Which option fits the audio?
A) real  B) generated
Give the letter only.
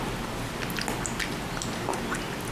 A